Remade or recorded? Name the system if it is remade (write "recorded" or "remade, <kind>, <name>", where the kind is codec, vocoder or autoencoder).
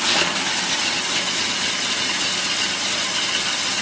recorded